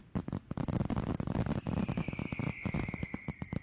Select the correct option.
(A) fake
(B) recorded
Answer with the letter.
B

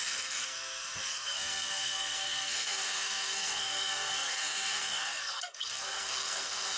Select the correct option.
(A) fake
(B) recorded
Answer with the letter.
A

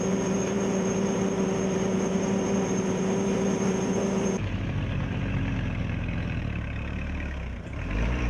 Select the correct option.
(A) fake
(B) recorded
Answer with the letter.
A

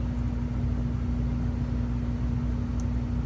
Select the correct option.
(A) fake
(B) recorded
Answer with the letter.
B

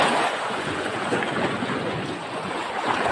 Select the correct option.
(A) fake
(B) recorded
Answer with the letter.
A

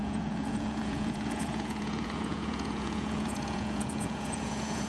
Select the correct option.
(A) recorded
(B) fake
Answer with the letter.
B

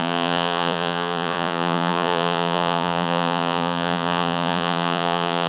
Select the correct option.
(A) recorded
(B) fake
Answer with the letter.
B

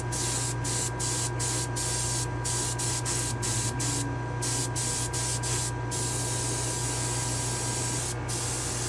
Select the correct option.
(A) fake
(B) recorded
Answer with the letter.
B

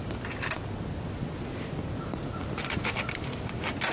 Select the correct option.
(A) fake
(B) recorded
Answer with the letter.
B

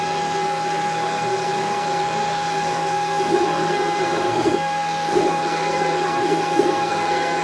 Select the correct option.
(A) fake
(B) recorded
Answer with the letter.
A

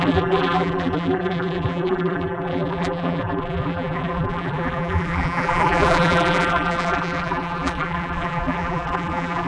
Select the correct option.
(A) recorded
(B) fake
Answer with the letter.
B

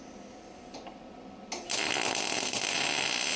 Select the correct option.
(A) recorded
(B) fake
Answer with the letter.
A